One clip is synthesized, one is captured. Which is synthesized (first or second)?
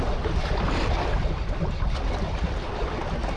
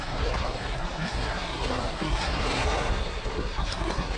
second